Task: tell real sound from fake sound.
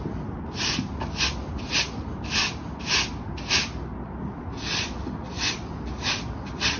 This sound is real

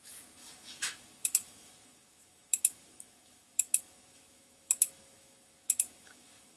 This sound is fake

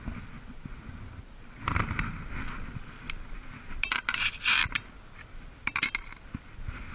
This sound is real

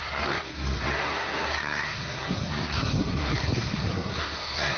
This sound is fake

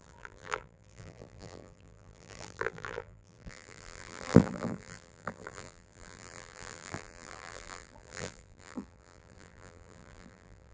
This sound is fake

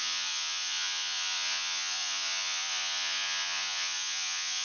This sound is fake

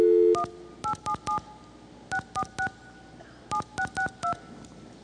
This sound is real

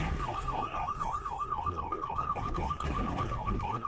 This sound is fake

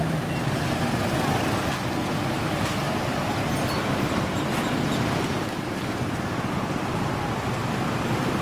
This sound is real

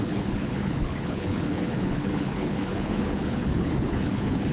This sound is fake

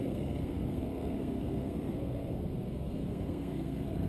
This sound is fake